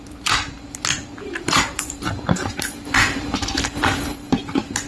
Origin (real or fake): fake